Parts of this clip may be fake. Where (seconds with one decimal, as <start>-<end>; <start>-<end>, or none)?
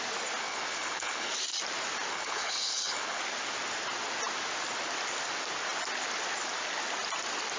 0.4-1.3; 2.1-3.2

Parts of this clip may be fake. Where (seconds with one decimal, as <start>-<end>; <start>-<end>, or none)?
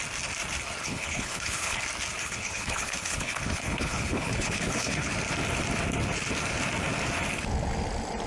0.8-1.8; 2.2-5.1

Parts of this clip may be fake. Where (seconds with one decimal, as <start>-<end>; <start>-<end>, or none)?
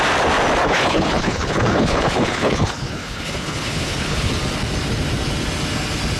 0.6-4.3